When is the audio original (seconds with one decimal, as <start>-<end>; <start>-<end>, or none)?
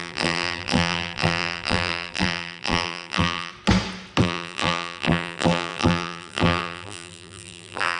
3.5-4.2